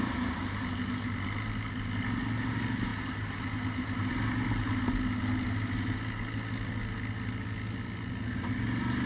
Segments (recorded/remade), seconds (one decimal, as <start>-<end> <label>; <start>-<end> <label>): 0.0-9.1 recorded